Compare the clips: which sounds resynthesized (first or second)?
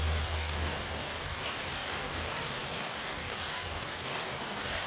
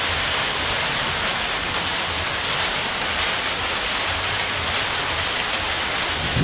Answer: first